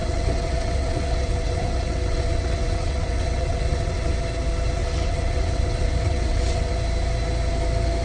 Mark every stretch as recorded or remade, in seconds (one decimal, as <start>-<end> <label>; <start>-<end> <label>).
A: 0.0-4.1 remade; 4.1-4.8 recorded; 4.8-6.7 remade; 6.7-8.0 recorded